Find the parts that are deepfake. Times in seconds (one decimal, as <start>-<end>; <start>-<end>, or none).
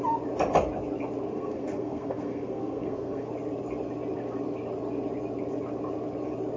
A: 1.3-3.3